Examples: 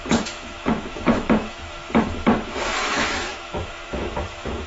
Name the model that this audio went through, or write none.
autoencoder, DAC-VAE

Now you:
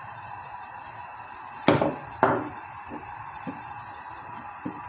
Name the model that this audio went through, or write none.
none